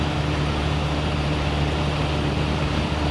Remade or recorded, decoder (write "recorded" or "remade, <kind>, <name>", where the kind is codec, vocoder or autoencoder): remade, vocoder, BigVGAN v2